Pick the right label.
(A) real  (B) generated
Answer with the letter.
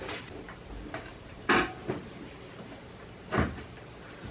B